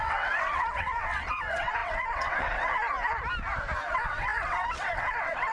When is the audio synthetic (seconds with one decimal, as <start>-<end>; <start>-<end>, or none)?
0.0-2.8; 3.9-5.5